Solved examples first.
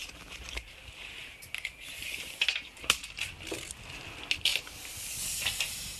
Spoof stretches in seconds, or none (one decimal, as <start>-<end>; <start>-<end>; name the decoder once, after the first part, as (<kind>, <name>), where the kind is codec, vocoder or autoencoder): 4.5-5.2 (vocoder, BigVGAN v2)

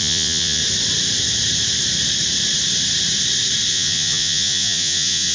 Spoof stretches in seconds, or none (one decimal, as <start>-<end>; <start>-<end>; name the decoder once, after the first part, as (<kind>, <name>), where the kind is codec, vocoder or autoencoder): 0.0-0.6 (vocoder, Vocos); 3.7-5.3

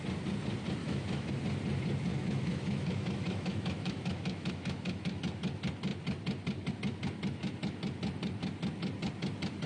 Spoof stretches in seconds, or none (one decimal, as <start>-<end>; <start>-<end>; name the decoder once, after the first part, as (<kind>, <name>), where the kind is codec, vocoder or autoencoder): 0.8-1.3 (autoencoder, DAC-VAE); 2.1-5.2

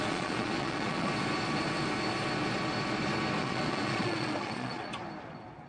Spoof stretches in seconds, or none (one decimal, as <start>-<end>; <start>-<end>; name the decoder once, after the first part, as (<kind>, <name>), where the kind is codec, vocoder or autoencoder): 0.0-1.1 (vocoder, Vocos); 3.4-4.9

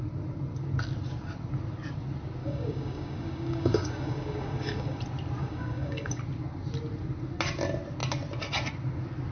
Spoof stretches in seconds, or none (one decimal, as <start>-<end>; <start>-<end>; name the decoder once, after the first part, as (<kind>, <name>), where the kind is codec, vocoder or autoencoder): 2.4-5.0 (codec, DAC); 5.4-6.2

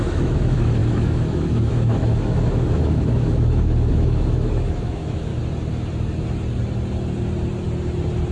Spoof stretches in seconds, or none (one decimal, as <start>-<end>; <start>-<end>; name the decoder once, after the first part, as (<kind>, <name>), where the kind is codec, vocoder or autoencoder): 0.0-5.3 (autoencoder, DAC-VAE)